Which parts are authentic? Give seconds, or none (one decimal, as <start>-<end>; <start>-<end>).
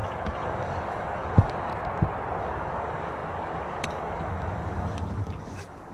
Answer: 1.7-2.4